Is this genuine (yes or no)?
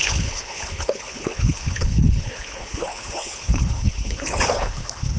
no